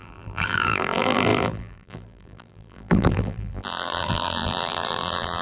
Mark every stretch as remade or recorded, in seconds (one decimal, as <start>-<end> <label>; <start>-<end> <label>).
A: 0.0-5.4 remade